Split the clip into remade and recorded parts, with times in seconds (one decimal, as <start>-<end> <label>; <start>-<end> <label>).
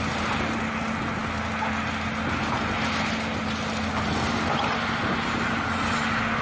0.0-6.4 recorded